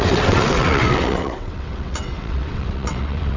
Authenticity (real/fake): fake